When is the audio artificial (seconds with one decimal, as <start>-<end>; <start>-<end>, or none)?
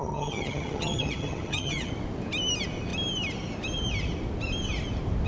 0.0-1.9